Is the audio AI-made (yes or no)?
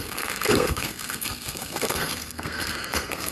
yes